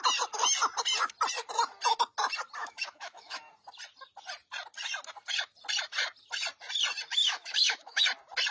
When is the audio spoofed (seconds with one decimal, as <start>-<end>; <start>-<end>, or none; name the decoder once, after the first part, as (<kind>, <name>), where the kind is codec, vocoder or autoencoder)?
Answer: 2.6-3.4 (autoencoder, DAC-VAE); 7.1-8.0